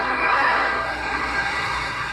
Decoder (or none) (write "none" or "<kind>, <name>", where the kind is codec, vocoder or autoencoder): codec, SNAC